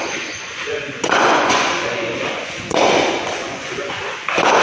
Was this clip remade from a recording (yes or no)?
yes